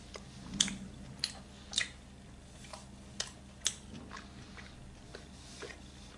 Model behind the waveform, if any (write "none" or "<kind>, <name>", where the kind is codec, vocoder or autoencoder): none